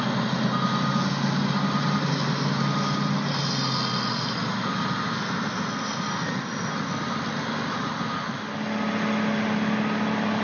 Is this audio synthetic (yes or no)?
no